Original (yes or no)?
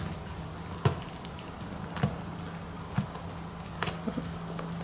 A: yes